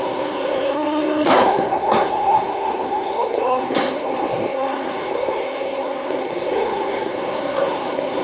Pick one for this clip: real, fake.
fake